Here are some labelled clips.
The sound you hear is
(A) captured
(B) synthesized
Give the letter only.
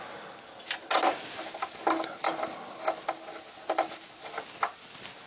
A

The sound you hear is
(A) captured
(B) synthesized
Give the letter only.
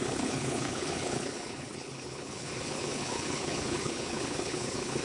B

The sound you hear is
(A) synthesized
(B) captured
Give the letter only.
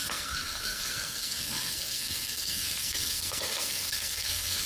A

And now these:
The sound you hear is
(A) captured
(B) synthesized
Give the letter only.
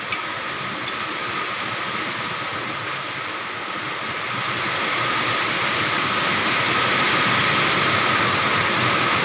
A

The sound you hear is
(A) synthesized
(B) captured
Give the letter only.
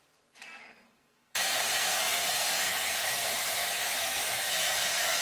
A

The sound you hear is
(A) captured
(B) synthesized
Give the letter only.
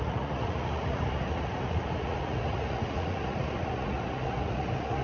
B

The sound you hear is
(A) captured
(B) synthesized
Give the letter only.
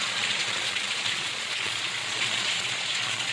B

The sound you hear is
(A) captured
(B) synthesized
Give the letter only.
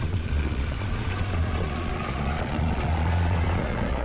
B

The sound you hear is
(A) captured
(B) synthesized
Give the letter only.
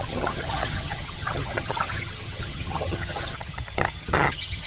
B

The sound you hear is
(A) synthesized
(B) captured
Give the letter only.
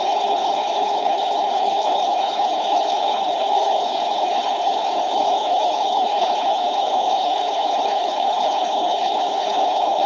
A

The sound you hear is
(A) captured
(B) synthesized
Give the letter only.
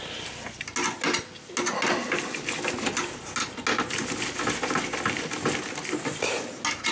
A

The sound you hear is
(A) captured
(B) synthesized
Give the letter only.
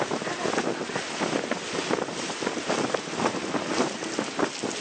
A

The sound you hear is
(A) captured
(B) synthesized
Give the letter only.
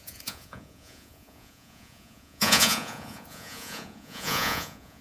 B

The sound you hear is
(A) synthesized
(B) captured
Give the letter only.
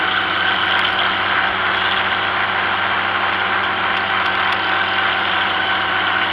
B